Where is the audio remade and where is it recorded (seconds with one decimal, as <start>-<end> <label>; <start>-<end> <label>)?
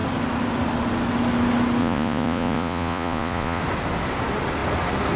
0.0-1.8 recorded; 1.8-3.6 remade; 3.6-5.2 recorded